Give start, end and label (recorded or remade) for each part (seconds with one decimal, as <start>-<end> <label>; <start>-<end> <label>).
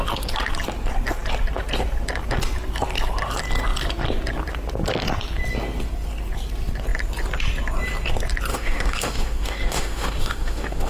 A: 0.0-8.5 recorded; 8.5-10.9 remade